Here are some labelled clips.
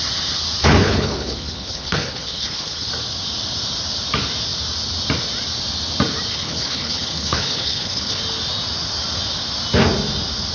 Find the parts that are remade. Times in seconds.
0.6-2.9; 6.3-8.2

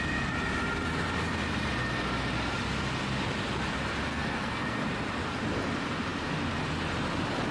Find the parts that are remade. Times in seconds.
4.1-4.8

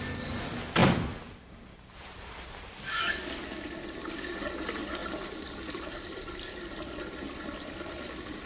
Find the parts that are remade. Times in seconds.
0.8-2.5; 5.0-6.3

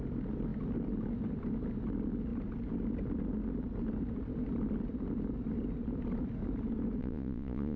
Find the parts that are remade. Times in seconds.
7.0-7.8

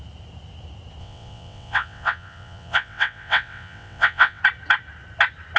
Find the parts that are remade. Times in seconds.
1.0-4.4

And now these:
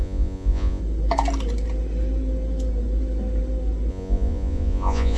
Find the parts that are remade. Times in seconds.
0.0-0.8; 3.9-5.2

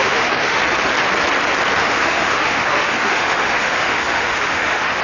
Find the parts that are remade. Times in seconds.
0.0-0.6; 1.8-5.0

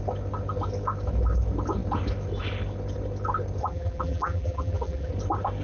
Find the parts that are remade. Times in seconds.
3.6-5.1